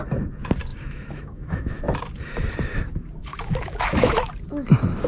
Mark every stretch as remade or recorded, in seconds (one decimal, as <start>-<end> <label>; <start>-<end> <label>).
0.0-0.7 recorded; 0.7-1.8 remade; 1.8-3.2 recorded; 3.2-4.3 remade; 4.3-5.1 recorded